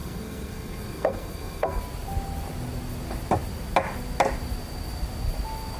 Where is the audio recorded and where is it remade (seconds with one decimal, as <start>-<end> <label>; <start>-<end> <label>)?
0.0-1.8 remade; 1.8-5.8 recorded